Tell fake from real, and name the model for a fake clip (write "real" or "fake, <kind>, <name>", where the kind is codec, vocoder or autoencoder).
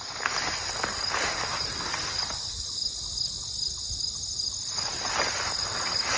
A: real